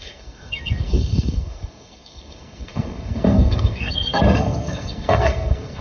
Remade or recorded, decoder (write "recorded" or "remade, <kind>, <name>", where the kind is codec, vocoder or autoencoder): remade, codec, SNAC